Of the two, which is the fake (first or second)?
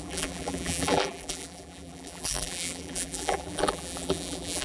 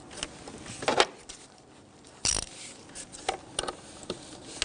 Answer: first